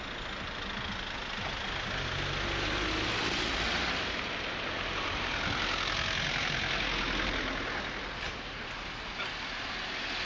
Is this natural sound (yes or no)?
yes